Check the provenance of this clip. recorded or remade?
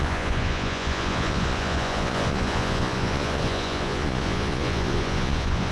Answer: remade